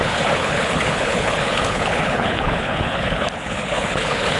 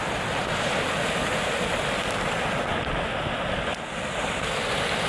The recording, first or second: second